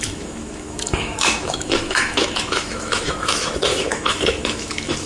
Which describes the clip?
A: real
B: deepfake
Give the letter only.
B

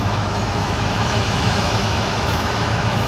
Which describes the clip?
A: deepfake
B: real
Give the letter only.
A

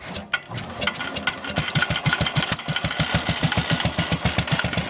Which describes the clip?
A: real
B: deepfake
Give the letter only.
A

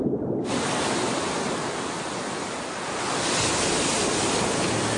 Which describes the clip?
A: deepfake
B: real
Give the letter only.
B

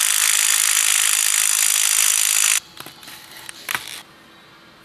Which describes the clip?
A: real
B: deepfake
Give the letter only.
A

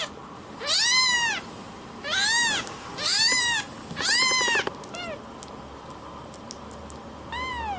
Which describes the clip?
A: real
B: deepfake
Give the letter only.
A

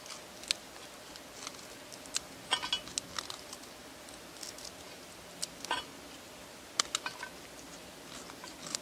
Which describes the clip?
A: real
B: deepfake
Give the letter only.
A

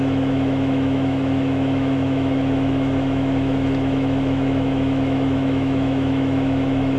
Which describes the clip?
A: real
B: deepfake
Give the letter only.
B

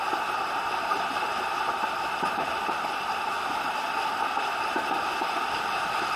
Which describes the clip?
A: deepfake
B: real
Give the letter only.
B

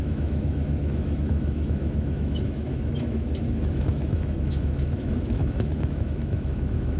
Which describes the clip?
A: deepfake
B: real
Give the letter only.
A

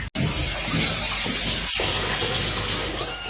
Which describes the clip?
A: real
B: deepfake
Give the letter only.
A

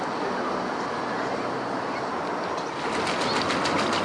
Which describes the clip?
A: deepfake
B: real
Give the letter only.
B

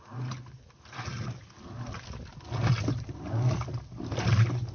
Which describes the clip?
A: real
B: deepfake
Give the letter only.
A